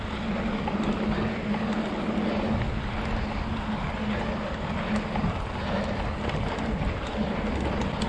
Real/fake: real